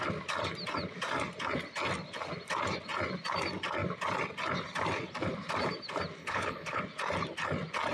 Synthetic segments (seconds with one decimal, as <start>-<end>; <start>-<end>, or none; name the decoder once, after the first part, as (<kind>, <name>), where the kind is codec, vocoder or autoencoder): 6.2-6.8 (codec, HILCodec)